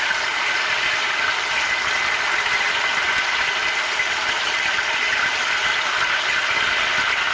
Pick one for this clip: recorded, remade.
recorded